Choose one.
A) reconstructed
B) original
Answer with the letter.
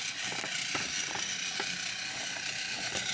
B